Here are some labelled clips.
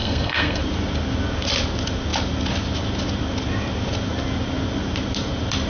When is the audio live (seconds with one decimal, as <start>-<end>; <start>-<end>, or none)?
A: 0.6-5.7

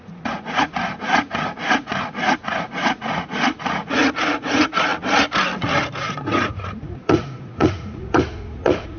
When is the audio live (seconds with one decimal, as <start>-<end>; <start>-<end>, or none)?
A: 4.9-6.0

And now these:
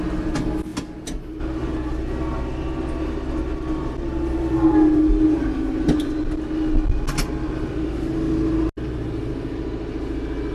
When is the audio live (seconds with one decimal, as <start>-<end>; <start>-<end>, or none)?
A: 0.0-10.5